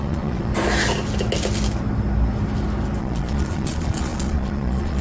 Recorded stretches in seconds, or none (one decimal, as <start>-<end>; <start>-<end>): 0.5-3.0